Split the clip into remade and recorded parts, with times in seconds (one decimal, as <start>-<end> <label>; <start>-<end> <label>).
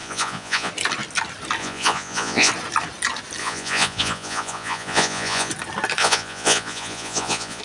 0.0-0.7 remade; 0.7-1.6 recorded; 1.6-2.5 remade; 2.5-3.4 recorded; 3.4-5.5 remade; 5.5-6.0 recorded; 6.0-7.6 remade